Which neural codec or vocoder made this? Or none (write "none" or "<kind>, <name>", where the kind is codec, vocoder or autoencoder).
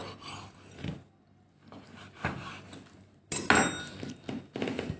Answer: none